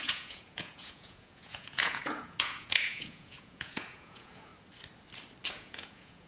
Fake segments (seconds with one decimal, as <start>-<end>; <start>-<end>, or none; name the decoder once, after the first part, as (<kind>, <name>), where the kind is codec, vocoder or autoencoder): 0.0-4.5 (vocoder, Vocos); 5.5-6.3

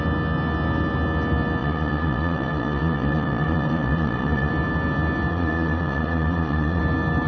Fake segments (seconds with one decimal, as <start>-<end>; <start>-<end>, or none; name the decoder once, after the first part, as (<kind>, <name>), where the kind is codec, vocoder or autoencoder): 1.6-4.5 (vocoder, Vocos); 5.3-6.8

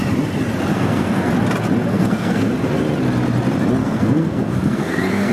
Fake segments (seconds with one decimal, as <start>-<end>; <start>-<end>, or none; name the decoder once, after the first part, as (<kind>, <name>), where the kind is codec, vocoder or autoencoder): 0.7-1.3 (codec, SNAC); 1.9-2.5; 3.8-5.3

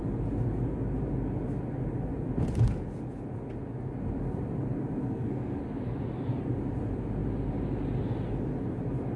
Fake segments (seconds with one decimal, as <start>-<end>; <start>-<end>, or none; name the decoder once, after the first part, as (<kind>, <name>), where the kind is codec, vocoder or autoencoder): 5.0-5.6 (codec, SNAC)

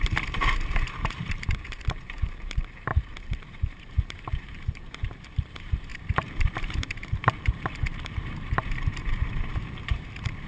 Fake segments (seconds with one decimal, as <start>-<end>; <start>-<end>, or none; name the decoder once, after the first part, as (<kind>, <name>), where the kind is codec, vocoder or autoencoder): 0.0-2.9 (vocoder, BigVGAN v2); 3.6-10.5

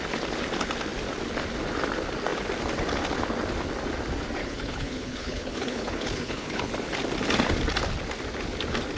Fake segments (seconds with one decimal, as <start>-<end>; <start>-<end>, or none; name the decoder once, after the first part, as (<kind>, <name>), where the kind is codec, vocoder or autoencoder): 4.4-6.7 (codec, HILCodec)